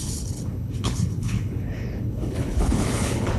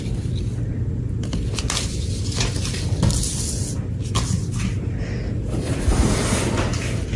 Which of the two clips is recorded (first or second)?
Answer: second